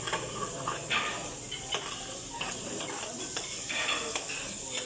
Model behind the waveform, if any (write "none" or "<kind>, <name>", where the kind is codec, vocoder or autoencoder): none